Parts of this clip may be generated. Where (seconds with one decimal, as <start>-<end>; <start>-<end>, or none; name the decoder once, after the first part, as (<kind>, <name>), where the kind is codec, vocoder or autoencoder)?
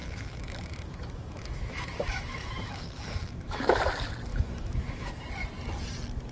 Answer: 0.0-3.8 (autoencoder, DAC-VAE); 4.3-5.1